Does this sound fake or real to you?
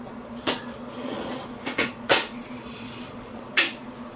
fake